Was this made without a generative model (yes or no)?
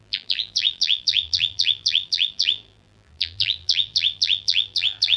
no